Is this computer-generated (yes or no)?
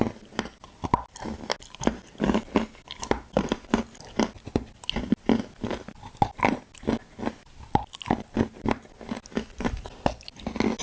no